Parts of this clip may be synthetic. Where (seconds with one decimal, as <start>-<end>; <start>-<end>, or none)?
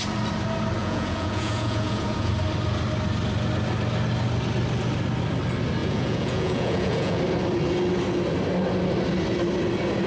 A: 0.8-2.3; 5.8-7.2